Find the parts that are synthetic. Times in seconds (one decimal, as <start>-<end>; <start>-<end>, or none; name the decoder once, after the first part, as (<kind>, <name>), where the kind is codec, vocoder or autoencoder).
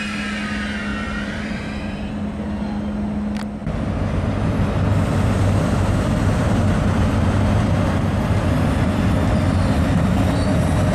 0.9-2.1 (vocoder, BigVGAN v2); 3.6-7.2